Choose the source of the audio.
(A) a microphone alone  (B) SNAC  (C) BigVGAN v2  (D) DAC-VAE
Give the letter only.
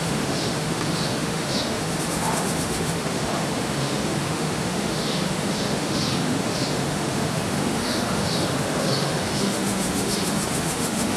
D